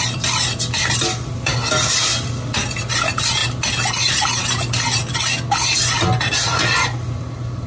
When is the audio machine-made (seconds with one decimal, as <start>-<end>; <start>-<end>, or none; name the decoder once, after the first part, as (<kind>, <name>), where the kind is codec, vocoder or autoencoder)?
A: none